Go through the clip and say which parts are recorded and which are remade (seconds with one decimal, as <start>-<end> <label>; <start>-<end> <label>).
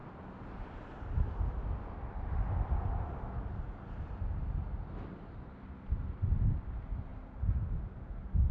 0.0-8.5 recorded